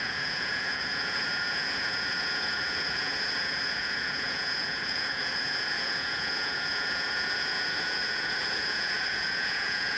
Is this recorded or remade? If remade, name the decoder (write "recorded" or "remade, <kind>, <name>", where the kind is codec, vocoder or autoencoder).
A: remade, vocoder, Vocos